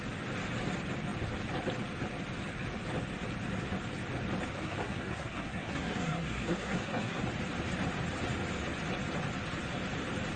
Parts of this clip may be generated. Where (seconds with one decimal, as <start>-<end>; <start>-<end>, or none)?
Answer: 4.6-7.2